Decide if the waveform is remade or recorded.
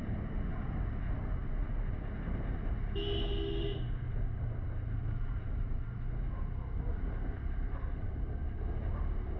recorded